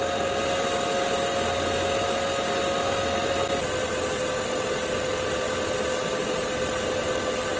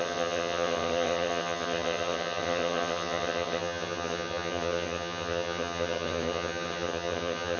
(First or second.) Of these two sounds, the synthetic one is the second